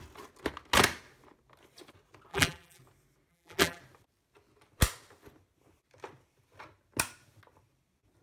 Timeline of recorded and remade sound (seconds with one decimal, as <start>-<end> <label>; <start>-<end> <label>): 0.0-2.3 recorded; 2.3-2.8 remade; 2.8-3.3 recorded; 3.3-3.8 remade; 3.8-8.2 recorded